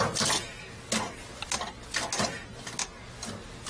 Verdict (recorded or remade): recorded